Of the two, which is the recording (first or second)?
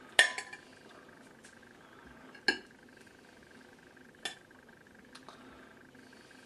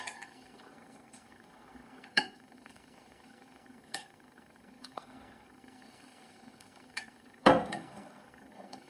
first